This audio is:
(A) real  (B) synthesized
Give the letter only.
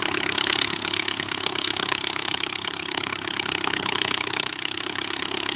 B